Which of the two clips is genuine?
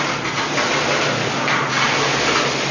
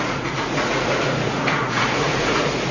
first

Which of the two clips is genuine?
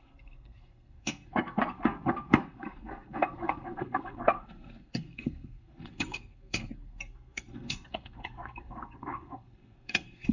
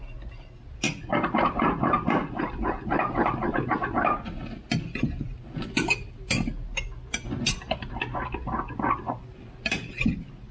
second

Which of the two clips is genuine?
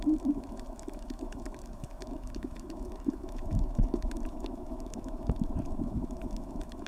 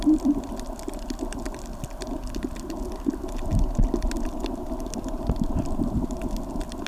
second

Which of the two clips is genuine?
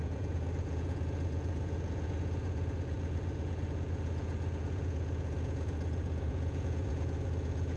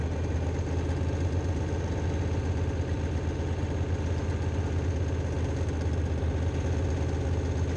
second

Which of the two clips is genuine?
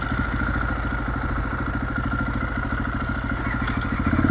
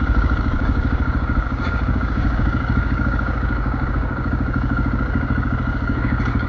first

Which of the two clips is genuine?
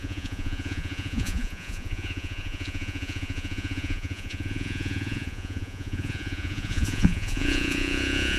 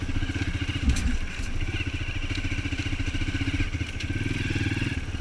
second